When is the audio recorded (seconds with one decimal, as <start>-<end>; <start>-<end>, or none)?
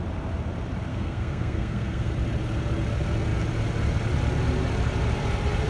0.0-0.9; 2.1-5.7